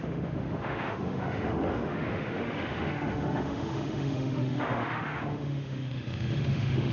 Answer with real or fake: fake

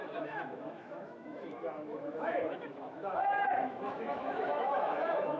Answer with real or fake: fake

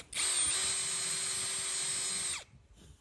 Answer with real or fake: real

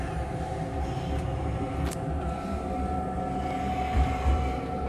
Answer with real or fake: real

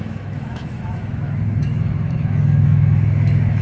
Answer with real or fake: fake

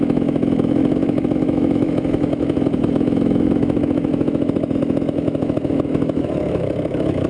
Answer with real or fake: fake